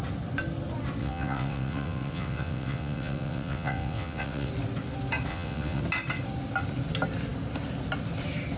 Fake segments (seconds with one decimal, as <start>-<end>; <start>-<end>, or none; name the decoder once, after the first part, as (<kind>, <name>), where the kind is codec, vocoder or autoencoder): 1.0-4.5 (vocoder, WaveNeXt); 5.3-5.8